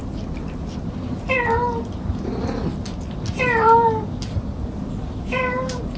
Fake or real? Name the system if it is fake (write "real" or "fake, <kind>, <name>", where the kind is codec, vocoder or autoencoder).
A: real